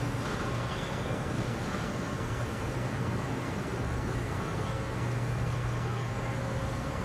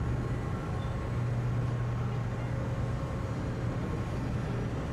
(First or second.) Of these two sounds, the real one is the second